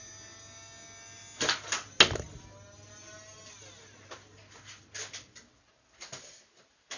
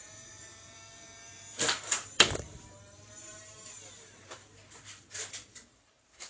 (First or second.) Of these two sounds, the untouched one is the first